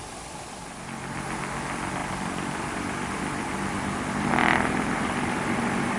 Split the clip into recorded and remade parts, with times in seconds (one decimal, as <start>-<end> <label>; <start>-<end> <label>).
0.0-2.0 recorded; 2.0-4.3 remade; 4.3-6.0 recorded